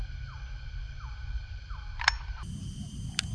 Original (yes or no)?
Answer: yes